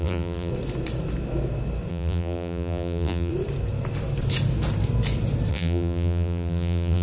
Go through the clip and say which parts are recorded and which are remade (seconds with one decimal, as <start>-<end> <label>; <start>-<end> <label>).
0.0-0.5 remade; 0.5-1.9 recorded; 1.9-3.3 remade; 3.3-5.5 recorded; 5.5-7.0 remade